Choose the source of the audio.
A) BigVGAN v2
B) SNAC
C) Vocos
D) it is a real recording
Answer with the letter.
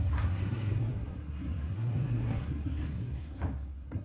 B